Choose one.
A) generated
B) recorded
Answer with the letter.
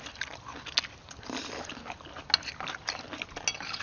B